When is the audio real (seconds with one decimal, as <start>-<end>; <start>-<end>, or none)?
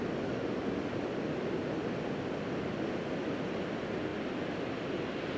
0.0-5.4